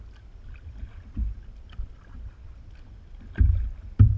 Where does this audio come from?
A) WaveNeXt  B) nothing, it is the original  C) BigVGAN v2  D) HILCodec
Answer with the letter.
B